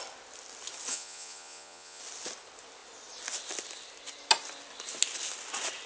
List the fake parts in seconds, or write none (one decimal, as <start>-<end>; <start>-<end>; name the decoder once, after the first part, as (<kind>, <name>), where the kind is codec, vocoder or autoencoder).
0.9-2.0 (vocoder, Vocos)